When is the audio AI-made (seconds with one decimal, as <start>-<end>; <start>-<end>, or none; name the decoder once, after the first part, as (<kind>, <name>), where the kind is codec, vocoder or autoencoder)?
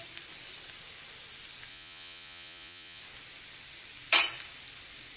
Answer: 1.7-3.0 (vocoder, Vocos)